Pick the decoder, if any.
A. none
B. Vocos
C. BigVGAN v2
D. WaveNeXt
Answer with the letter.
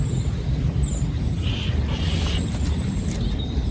A